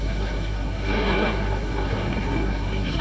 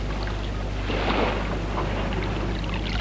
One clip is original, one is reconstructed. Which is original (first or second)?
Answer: second